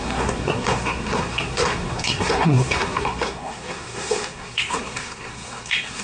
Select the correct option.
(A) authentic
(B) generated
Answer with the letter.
B